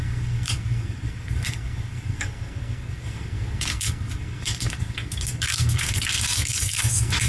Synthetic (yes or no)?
yes